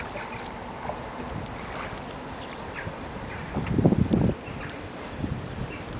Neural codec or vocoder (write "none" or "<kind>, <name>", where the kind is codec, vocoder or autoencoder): none